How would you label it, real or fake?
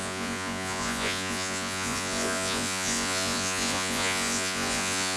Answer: fake